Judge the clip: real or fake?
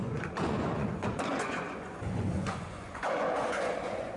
fake